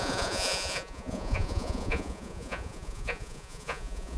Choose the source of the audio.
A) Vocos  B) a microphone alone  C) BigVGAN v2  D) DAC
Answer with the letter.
A